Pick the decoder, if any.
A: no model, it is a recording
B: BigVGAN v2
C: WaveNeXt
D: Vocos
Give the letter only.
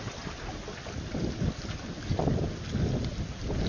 A